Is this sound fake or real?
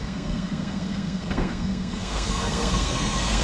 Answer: fake